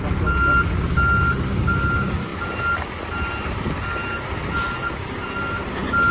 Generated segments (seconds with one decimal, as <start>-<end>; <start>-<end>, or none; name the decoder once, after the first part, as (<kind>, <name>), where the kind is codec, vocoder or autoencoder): none